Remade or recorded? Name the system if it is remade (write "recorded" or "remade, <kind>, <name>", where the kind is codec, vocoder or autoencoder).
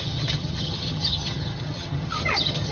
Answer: remade, vocoder, HiFi-GAN